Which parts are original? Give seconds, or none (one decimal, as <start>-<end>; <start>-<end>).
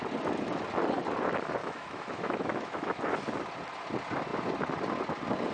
0.0-1.6; 3.0-5.5